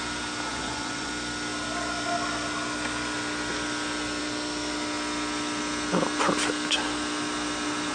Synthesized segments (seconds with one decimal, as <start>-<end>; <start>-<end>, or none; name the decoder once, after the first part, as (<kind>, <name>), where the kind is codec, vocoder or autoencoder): 0.5-1.1 (vocoder, Vocos)